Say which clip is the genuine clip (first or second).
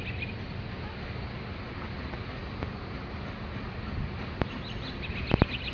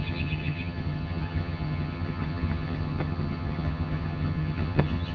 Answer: first